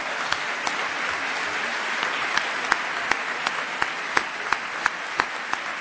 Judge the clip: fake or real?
real